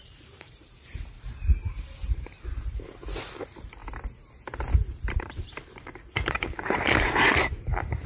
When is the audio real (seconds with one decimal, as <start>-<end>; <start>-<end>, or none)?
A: 3.8-4.7